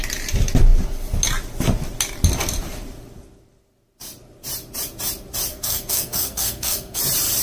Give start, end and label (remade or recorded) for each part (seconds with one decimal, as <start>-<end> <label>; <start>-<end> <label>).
0.0-5.5 recorded; 5.5-7.0 remade; 7.0-7.4 recorded